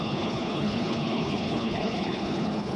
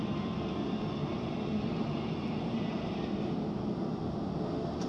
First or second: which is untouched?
second